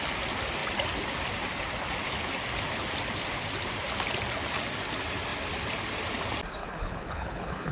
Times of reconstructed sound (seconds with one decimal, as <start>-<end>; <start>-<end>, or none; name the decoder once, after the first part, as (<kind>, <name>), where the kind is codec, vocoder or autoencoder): 6.6-7.7 (codec, HILCodec)